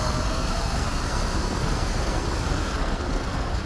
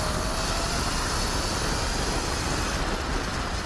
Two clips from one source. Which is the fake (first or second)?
first